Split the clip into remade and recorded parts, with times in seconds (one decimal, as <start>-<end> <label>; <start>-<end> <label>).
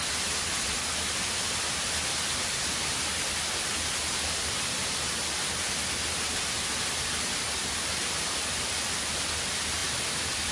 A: 0.0-10.5 recorded